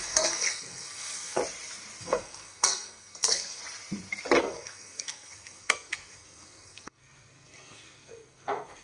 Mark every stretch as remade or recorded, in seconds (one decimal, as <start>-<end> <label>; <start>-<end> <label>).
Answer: 0.0-1.4 remade; 1.4-2.0 recorded; 2.0-3.6 remade; 3.6-4.4 recorded; 4.4-8.8 remade